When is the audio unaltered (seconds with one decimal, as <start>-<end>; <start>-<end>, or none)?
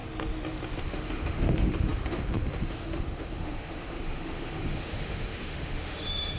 0.0-0.8